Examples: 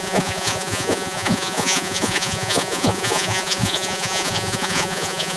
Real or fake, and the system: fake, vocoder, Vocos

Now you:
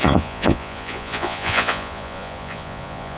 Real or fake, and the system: fake, vocoder, Vocos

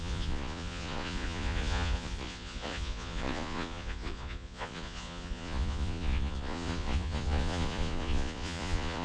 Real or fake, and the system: fake, vocoder, Vocos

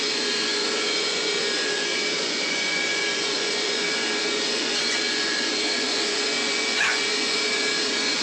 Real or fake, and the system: fake, vocoder, Vocos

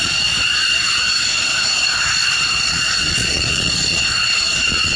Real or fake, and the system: fake, vocoder, Vocos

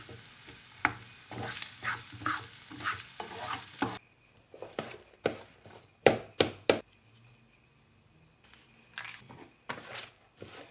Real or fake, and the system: real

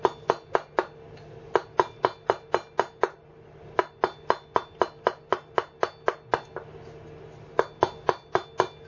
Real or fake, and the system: real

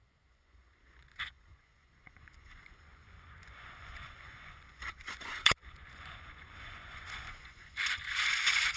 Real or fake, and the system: fake, vocoder, Vocos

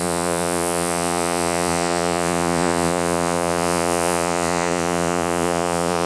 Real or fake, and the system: fake, vocoder, Vocos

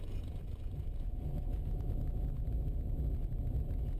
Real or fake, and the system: fake, vocoder, Vocos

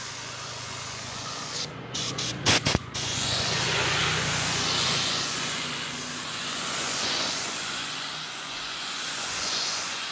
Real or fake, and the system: fake, vocoder, Vocos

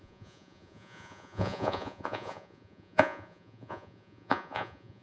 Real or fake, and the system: fake, vocoder, Vocos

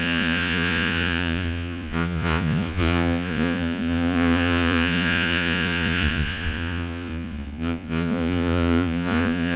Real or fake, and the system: fake, vocoder, Vocos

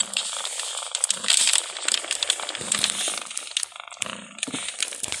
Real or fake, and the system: real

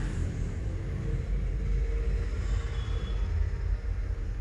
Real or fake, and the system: real